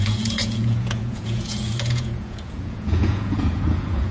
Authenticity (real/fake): fake